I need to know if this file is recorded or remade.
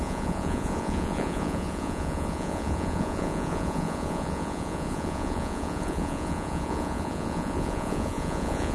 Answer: remade